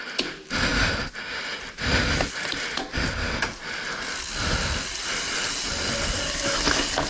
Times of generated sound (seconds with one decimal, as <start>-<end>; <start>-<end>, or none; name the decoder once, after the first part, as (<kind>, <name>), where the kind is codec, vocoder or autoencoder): none